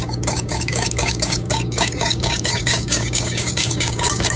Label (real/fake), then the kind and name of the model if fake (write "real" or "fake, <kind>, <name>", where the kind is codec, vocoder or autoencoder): fake, codec, DAC